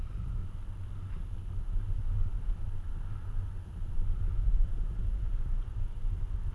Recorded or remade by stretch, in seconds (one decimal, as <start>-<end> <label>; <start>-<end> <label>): 0.0-0.4 remade; 0.4-4.3 recorded; 4.3-6.5 remade